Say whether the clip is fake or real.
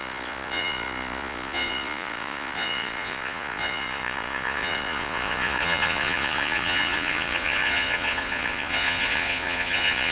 fake